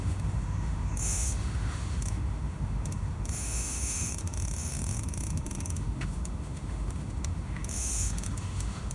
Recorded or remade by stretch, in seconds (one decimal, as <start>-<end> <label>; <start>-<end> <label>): 0.0-8.9 remade